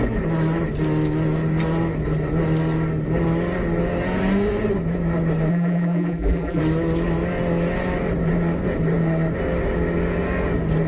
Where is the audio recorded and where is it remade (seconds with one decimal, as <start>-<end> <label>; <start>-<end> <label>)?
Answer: 0.0-5.5 recorded; 5.5-6.6 remade; 6.6-10.9 recorded